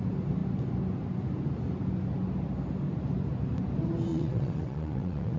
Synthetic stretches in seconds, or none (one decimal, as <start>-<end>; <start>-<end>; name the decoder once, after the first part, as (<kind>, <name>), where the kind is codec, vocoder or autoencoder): 4.1-5.4 (vocoder, WaveNeXt)